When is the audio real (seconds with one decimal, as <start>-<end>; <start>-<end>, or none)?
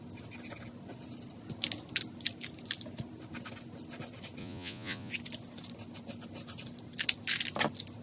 0.0-4.4; 5.1-8.0